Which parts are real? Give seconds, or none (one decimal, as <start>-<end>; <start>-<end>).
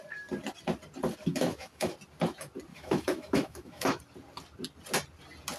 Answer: 0.0-1.3; 1.9-2.7; 4.0-5.6